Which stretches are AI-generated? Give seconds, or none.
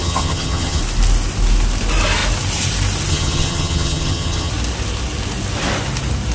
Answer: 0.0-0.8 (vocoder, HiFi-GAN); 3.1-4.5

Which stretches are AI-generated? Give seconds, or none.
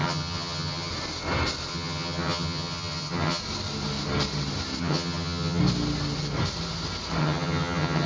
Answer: 0.0-0.9 (vocoder, HiFi-GAN); 1.7-3.4; 4.8-5.6; 7.2-8.1